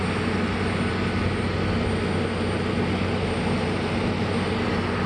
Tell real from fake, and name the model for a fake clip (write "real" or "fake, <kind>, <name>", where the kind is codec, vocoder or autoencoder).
real